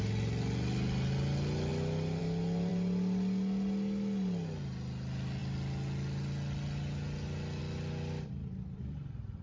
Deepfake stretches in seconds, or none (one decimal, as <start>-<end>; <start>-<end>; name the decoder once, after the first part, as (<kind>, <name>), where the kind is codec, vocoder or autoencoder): none